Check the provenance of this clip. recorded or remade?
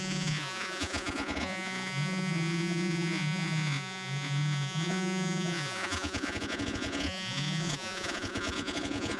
remade